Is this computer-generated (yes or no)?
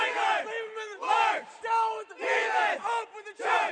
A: no